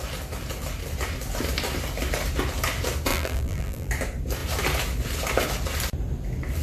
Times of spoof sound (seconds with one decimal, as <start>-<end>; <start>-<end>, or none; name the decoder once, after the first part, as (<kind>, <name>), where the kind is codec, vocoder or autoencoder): 3.1-3.9 (vocoder, BigVGAN v2)